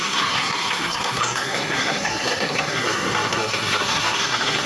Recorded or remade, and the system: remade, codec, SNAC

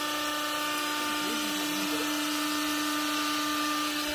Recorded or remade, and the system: recorded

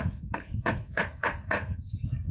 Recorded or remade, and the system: remade, codec, SNAC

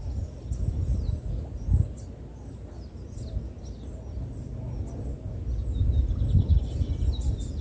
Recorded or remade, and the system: recorded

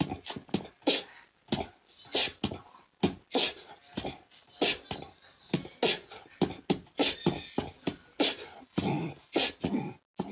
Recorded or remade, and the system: recorded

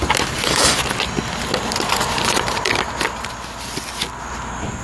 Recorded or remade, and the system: recorded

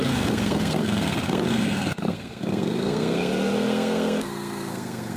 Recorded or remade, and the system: remade, codec, SNAC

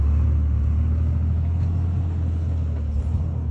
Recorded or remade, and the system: recorded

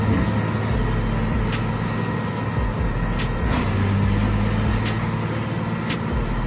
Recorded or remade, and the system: recorded